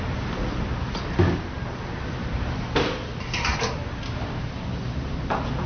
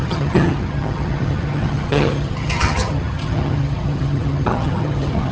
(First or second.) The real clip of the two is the first